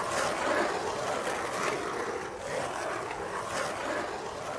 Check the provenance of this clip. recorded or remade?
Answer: recorded